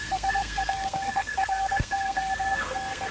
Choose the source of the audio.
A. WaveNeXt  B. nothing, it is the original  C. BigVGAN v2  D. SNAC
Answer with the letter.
D